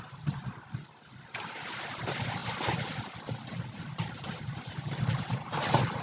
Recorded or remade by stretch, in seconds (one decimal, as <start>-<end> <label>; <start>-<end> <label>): 0.0-0.4 remade; 0.4-2.0 recorded; 2.0-2.4 remade; 2.4-3.5 recorded; 3.5-6.0 remade

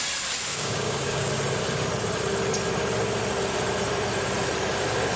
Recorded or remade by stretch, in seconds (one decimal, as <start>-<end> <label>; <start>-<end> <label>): 0.0-0.5 recorded; 0.5-1.3 remade; 1.3-5.2 recorded

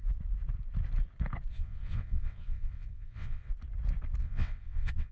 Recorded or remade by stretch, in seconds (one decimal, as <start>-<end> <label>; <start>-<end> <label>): 0.0-1.5 recorded; 1.5-3.5 remade; 3.5-4.2 recorded; 4.2-5.1 remade

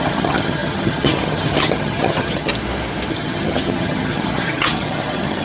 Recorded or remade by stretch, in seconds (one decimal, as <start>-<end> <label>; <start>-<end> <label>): 0.0-2.5 remade; 2.5-3.1 recorded; 3.1-5.4 remade

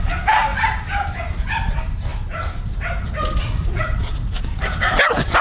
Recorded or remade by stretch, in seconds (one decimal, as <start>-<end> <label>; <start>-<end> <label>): 0.0-5.4 recorded

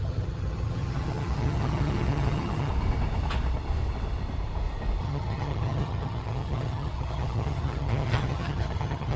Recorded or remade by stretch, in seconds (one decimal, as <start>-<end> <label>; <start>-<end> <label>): 0.0-2.7 remade; 2.7-5.0 recorded; 5.0-9.2 remade

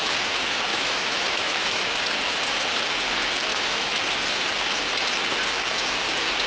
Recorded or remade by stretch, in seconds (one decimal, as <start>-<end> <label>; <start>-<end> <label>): 0.0-0.7 recorded; 0.7-1.9 remade; 1.9-3.5 recorded; 3.5-4.0 remade; 4.0-6.5 recorded

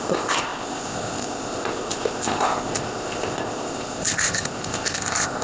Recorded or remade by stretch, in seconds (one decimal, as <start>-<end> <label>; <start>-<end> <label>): 0.0-5.4 remade